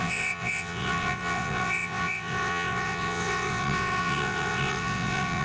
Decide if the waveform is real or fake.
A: fake